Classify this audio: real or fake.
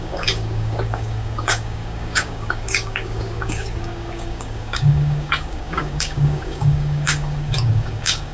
fake